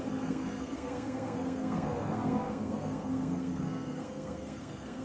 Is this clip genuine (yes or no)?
no